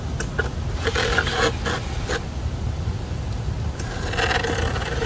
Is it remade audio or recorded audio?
recorded